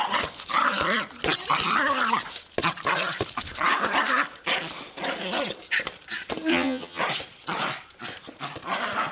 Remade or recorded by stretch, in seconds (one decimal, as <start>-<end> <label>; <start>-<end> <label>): 0.0-6.5 recorded; 6.5-7.0 remade; 7.0-9.1 recorded